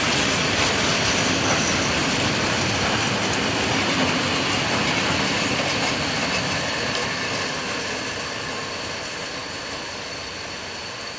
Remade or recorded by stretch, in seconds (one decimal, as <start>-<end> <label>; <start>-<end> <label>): 0.0-11.2 recorded